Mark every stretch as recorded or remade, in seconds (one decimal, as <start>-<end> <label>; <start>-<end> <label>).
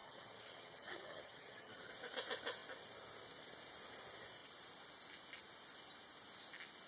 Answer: 0.0-1.9 remade; 1.9-6.9 recorded